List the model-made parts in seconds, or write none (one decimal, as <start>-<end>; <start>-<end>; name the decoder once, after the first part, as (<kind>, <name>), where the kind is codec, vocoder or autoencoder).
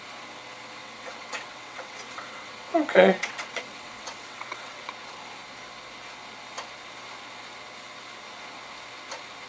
0.8-4.9 (vocoder, WaveNeXt)